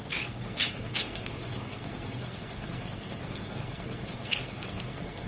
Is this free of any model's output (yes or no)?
no